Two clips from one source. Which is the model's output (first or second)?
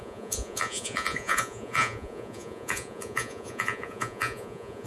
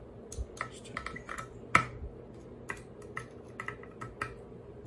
first